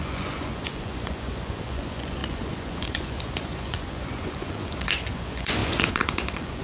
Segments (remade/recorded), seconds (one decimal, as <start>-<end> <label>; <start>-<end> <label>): 0.0-6.6 remade